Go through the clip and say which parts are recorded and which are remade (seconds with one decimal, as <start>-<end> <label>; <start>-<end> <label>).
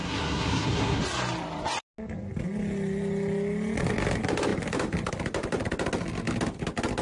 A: 0.0-1.0 remade; 1.0-7.0 recorded